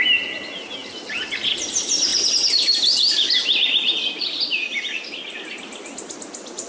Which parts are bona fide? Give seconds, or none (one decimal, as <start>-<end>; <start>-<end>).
0.0-0.8; 1.7-2.1; 4.9-6.7